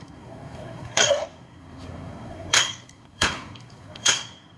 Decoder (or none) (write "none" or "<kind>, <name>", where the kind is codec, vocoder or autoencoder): codec, SNAC